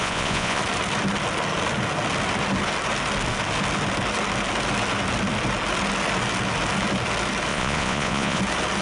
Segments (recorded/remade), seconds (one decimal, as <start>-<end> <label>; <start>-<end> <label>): 0.0-0.6 remade; 0.6-7.5 recorded; 7.5-8.4 remade; 8.4-8.8 recorded